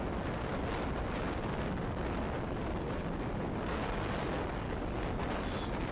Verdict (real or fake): real